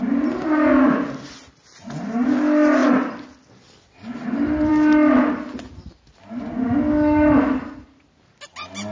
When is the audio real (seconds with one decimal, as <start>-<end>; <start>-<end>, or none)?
0.0-8.9